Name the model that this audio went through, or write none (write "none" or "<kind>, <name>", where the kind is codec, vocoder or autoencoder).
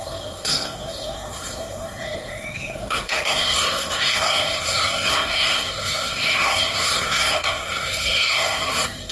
codec, SNAC